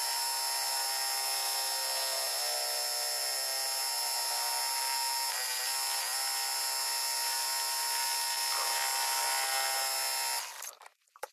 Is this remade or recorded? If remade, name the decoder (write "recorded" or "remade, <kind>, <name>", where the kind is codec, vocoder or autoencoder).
recorded